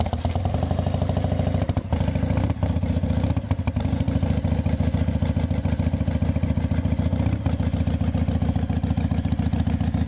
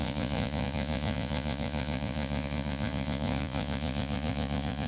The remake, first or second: second